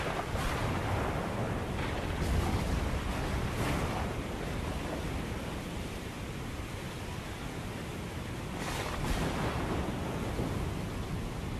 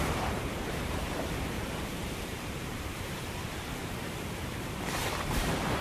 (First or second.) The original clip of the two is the first